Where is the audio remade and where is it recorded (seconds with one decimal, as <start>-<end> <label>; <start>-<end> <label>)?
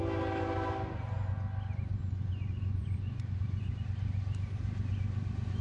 0.0-2.0 recorded; 2.0-3.7 remade; 3.7-5.6 recorded